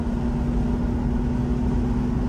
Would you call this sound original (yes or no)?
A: yes